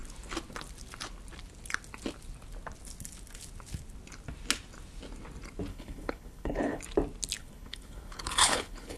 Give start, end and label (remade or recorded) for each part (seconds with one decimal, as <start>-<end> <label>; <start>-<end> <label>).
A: 0.0-5.7 recorded; 5.7-6.8 remade; 6.8-7.4 recorded; 7.4-9.0 remade